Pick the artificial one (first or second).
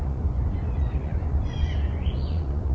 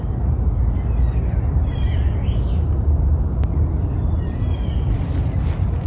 first